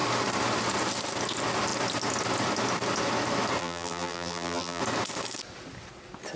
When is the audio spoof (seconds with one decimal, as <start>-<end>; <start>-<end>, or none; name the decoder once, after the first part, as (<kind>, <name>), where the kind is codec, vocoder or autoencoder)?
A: 3.6-4.8 (vocoder, BigVGAN v2)